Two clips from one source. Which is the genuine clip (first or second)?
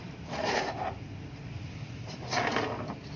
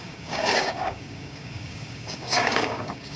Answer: first